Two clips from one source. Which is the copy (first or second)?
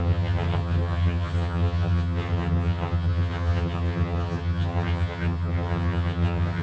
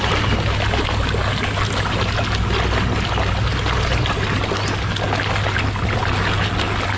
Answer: first